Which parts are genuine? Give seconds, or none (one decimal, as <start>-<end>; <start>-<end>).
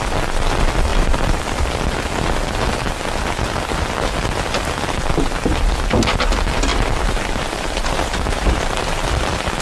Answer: 0.0-0.9; 1.4-6.7; 8.8-9.6